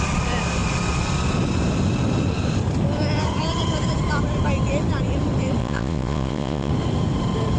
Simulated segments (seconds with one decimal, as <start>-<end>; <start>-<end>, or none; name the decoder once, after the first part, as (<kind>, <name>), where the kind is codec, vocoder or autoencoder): 5.6-6.7 (vocoder, Vocos)